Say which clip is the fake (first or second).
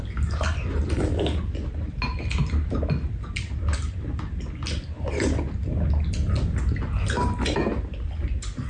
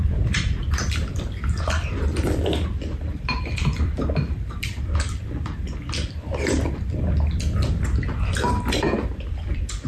second